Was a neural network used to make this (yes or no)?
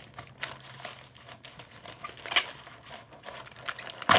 no